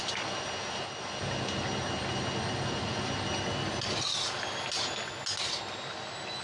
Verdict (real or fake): real